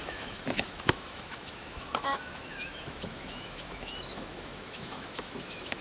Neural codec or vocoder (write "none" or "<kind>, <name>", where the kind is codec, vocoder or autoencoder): autoencoder, DAC-VAE